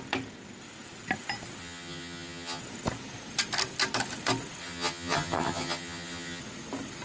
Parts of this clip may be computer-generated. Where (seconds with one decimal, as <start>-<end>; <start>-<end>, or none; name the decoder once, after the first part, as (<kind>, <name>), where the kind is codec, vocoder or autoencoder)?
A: 1.6-2.6 (vocoder, HiFi-GAN); 4.6-6.4

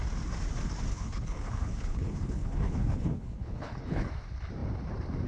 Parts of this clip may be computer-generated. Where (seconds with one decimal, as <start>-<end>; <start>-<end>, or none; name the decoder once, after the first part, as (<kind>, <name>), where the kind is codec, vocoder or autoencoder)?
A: 0.9-4.1 (codec, HILCodec)

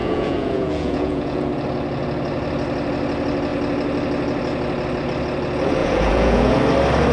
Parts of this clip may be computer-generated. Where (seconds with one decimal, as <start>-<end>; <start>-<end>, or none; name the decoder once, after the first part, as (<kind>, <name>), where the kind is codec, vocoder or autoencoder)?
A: 0.0-1.4 (vocoder, Vocos); 5.8-6.6

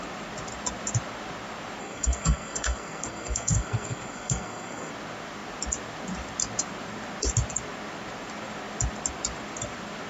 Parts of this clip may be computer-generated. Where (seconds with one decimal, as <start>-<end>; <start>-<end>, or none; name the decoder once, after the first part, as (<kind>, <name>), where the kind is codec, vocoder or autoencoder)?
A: 1.8-4.9 (codec, SNAC)

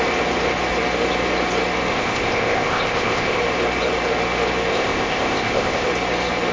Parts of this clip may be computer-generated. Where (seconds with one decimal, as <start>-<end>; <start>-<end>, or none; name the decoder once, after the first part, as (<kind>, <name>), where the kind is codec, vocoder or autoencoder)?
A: 1.9-3.4 (codec, ZipCodec); 4.7-5.9

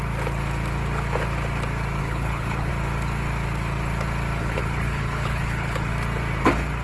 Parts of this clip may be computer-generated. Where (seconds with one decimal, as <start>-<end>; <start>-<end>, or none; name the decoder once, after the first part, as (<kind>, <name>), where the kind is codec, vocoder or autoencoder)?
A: 2.0-2.7 (codec, HILCodec); 4.4-5.9

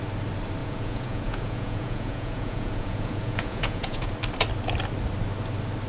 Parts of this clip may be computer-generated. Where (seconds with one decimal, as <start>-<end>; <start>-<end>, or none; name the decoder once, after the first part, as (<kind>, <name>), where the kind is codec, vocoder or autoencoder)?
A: 0.6-4.1 (vocoder, Vocos)